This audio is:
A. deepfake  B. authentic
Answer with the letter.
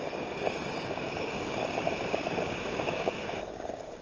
A